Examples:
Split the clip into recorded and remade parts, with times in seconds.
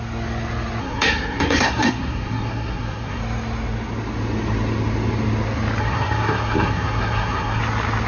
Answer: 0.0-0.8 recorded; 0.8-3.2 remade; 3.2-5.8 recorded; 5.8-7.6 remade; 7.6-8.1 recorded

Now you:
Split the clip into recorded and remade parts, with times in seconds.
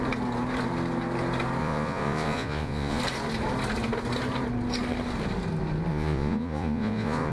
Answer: 0.0-1.6 recorded; 1.6-3.0 remade; 3.0-5.9 recorded; 5.9-7.3 remade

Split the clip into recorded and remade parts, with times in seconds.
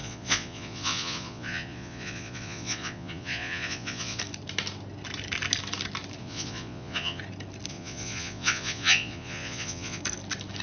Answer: 0.0-4.2 remade; 4.2-6.2 recorded; 6.2-7.2 remade; 7.2-7.7 recorded; 7.7-10.0 remade; 10.0-10.6 recorded